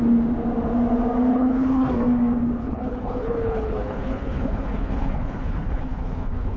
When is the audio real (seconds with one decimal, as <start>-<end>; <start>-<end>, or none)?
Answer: 0.0-1.3; 1.9-2.6